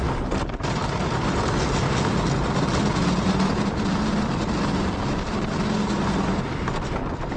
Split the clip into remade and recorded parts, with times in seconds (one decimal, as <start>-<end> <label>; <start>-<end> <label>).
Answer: 0.0-7.4 recorded